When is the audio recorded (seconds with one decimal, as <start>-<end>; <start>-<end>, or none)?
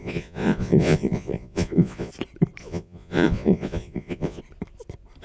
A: 2.1-2.6; 4.4-5.2